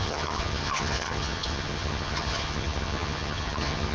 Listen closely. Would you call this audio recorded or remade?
remade